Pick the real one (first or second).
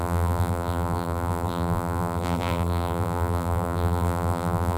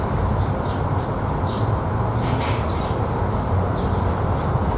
second